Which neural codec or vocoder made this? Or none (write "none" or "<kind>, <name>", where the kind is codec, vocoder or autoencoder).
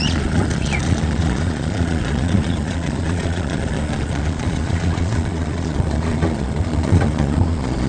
vocoder, Vocos